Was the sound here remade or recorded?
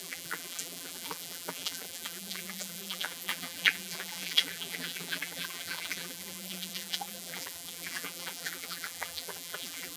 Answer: remade